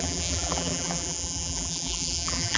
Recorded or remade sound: remade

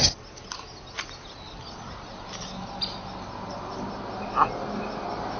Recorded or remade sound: recorded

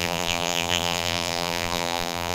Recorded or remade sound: remade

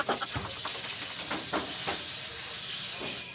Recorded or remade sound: recorded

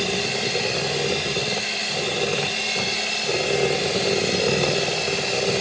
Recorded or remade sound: recorded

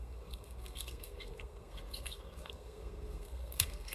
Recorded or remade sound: remade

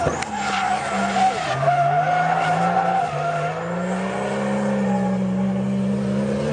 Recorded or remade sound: recorded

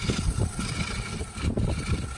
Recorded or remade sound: recorded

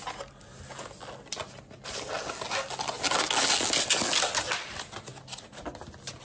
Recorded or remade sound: recorded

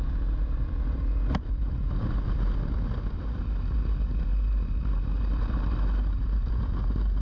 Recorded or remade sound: recorded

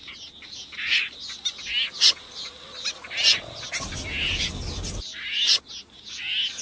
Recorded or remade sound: recorded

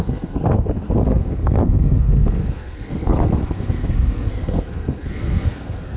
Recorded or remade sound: remade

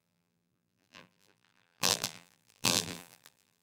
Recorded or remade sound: remade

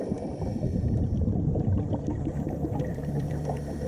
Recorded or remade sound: remade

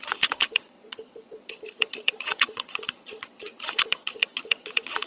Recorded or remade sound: remade